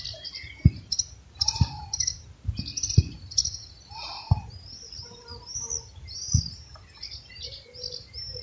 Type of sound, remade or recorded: recorded